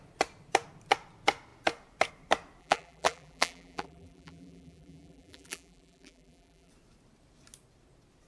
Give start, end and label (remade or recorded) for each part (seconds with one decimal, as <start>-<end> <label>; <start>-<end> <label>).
0.0-2.6 recorded; 2.6-6.7 remade; 6.7-8.3 recorded